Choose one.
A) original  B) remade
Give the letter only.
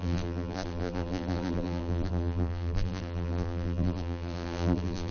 B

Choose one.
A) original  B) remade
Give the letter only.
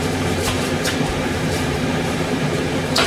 B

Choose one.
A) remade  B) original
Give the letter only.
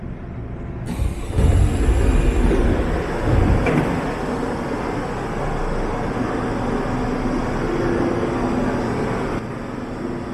B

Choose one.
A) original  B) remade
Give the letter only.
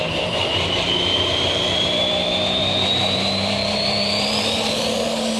B